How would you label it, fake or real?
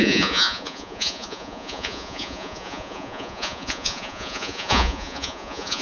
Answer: fake